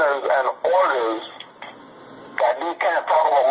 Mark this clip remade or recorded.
recorded